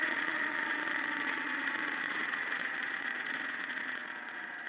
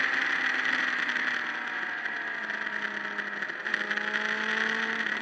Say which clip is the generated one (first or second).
first